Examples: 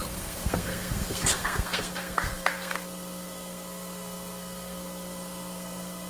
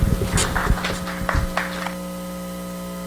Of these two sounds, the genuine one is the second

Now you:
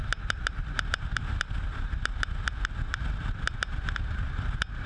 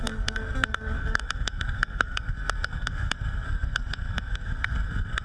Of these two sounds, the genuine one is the first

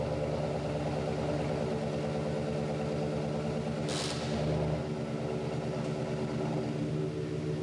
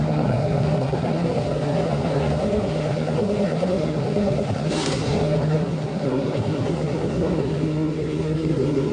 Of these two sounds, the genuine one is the first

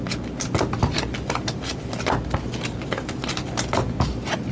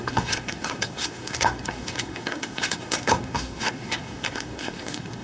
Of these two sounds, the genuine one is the first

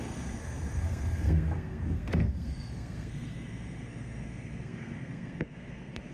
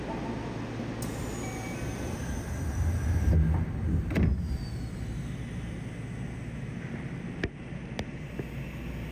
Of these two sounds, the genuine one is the second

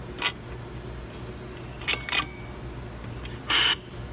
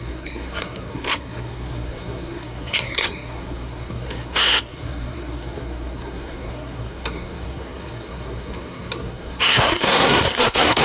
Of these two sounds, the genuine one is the first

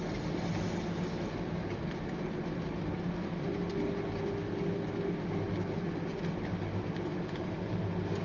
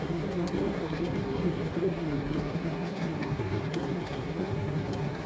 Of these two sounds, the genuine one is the first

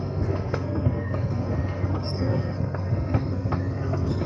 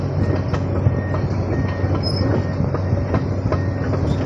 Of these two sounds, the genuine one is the second